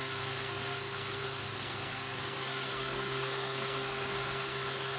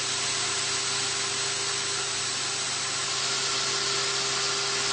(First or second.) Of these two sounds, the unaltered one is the second